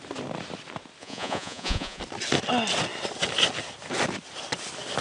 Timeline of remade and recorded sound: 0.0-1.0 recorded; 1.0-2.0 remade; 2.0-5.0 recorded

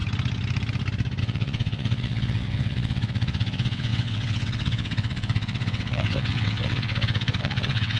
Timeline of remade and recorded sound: 0.0-1.2 recorded; 1.2-8.0 remade

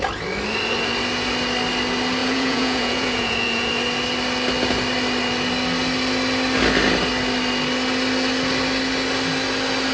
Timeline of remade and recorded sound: 0.0-2.2 recorded; 2.2-3.7 remade; 3.7-9.9 recorded

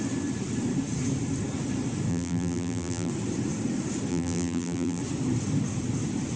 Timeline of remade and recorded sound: 0.0-2.1 recorded; 2.1-3.1 remade; 3.1-4.1 recorded; 4.1-5.0 remade; 5.0-6.4 recorded